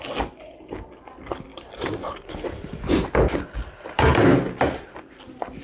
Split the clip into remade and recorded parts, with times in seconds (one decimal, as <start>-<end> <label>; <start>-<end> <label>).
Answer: 0.0-5.6 recorded